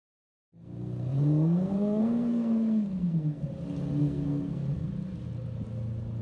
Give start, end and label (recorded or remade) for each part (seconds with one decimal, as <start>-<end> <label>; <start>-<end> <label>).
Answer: 0.0-3.5 remade; 3.5-4.0 recorded; 4.0-4.9 remade; 4.9-6.2 recorded